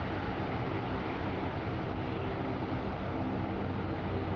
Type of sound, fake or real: real